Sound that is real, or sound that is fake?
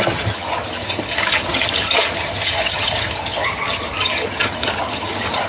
fake